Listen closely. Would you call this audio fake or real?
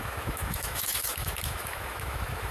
fake